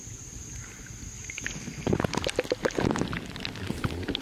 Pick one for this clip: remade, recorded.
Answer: recorded